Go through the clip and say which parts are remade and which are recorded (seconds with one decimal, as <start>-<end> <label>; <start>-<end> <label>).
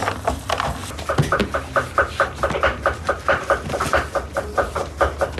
0.0-5.4 recorded